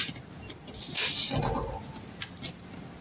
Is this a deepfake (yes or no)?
no